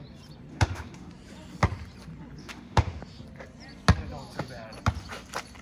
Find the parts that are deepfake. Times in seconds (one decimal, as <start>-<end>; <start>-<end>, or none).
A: 0.5-1.1; 2.4-3.0